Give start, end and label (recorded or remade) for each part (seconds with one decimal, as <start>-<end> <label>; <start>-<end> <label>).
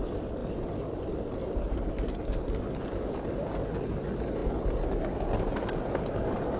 0.0-6.6 recorded